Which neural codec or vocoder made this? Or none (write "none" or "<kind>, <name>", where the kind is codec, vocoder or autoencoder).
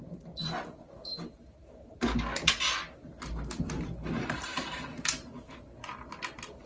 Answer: none